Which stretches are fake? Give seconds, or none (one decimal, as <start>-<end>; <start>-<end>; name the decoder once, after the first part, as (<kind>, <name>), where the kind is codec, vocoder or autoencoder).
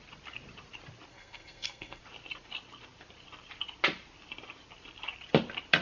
1.1-2.0 (codec, SNAC)